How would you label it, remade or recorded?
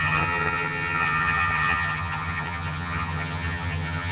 remade